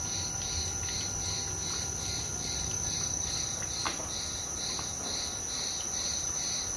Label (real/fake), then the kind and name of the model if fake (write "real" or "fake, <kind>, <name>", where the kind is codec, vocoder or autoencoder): fake, vocoder, BigVGAN v2